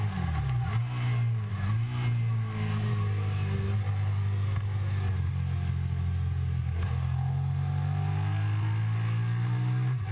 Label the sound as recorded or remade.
recorded